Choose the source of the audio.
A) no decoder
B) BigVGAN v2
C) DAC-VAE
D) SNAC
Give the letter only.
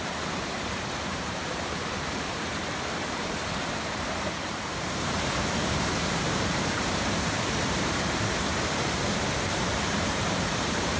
B